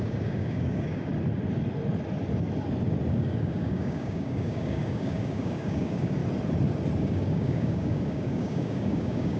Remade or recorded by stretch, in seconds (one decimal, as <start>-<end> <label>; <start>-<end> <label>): 0.0-1.1 remade; 1.1-3.1 recorded; 3.1-6.2 remade; 6.2-7.0 recorded; 7.0-9.4 remade